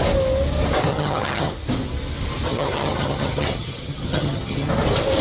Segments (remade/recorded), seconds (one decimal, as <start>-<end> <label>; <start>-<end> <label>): 0.0-0.9 recorded; 0.9-1.5 remade; 1.5-2.5 recorded; 2.5-4.7 remade; 4.7-5.2 recorded